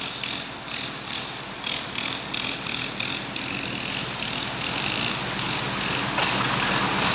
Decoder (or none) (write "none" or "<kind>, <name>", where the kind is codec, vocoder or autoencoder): none